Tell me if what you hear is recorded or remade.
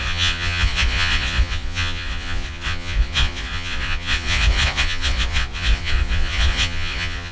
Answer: remade